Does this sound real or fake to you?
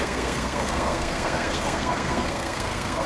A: fake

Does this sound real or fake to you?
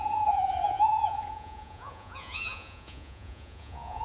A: fake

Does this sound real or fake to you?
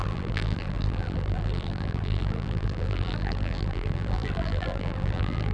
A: fake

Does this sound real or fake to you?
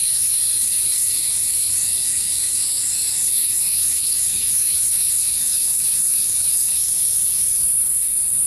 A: fake